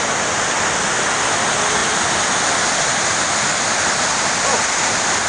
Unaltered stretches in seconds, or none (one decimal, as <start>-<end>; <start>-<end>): 0.0-5.3